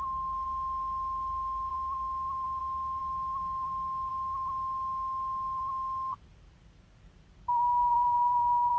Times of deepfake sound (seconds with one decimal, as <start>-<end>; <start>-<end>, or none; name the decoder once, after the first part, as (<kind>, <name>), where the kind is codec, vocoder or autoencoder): 7.9-8.8 (vocoder, BigVGAN v2)